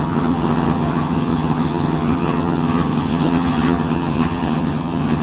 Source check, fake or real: fake